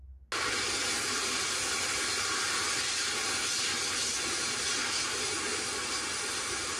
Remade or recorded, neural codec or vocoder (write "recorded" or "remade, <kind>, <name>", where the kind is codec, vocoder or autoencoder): recorded